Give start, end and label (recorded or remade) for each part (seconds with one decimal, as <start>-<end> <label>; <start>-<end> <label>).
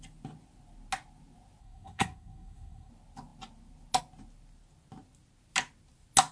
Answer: 0.0-1.6 recorded; 1.6-2.9 remade; 2.9-6.3 recorded